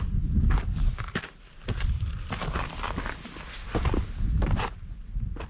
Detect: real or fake real